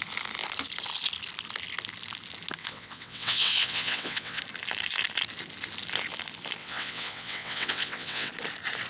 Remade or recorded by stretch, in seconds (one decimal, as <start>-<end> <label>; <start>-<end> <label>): 0.0-2.6 recorded; 2.6-4.4 remade; 4.4-6.6 recorded; 6.6-8.3 remade; 8.3-8.9 recorded